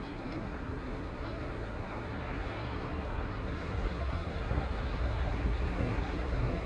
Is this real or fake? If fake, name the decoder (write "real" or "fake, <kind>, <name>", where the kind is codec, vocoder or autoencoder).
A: fake, codec, SNAC